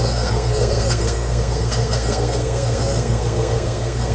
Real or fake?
fake